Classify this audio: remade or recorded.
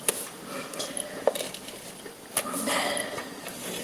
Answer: recorded